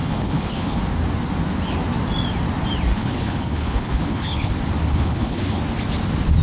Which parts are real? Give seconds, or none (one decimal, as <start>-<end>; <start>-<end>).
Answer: 0.8-2.9; 4.5-4.9; 5.6-6.4

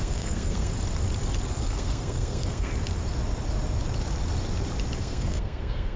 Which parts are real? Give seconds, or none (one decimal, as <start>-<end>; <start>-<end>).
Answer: 0.7-1.7; 2.7-5.0